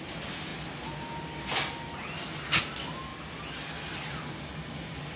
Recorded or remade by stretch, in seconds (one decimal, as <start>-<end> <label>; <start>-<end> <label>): 0.0-5.2 recorded